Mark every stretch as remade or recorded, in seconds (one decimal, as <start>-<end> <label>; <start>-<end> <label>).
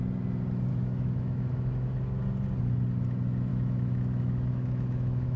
0.0-0.7 recorded; 0.7-2.2 remade; 2.2-3.5 recorded; 3.5-5.4 remade